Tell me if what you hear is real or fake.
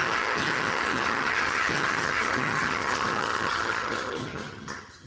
fake